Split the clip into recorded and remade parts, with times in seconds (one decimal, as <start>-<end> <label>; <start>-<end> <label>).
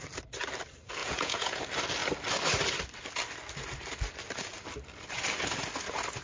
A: 0.0-1.0 recorded; 1.0-1.6 remade; 1.6-6.2 recorded